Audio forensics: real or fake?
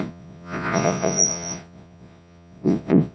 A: fake